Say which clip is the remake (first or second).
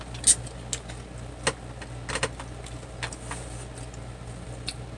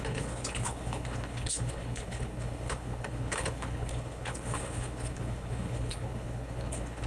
second